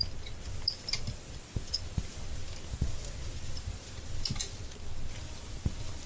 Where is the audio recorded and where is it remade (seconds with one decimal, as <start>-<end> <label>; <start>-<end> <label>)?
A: 0.0-6.1 recorded